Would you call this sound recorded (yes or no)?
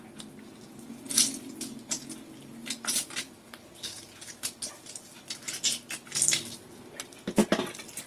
yes